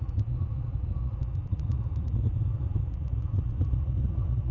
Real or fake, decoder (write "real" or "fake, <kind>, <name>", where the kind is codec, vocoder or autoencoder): fake, vocoder, Vocos